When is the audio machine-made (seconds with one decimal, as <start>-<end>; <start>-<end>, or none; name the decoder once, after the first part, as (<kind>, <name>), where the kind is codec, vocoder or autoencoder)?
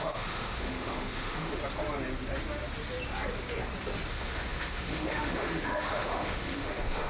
0.0-1.6 (autoencoder, DAC-VAE); 4.1-7.1